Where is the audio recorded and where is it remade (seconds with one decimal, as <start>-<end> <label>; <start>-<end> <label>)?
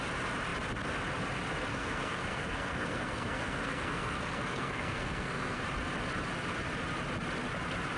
0.0-1.7 recorded; 1.7-5.6 remade; 5.6-8.0 recorded